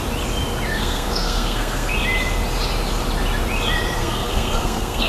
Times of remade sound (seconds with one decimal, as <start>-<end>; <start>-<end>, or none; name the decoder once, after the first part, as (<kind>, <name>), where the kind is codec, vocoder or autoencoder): 0.7-1.9 (codec, SNAC); 4.0-5.1